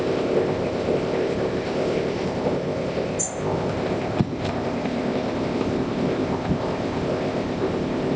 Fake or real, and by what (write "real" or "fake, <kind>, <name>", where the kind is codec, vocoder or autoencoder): fake, codec, ZipCodec